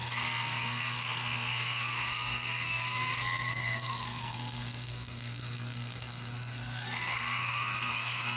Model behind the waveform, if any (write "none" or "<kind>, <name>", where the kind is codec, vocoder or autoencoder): codec, SNAC